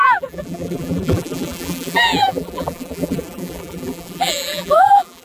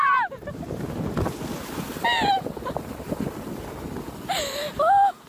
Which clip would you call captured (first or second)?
second